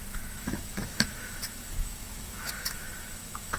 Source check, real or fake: fake